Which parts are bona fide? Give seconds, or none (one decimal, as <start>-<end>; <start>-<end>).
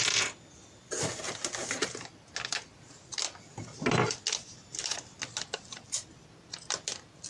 0.0-7.3